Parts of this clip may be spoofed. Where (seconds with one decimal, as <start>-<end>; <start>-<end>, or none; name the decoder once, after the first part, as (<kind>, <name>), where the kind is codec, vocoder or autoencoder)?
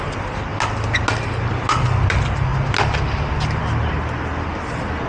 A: none